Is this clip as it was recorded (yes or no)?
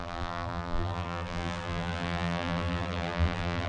no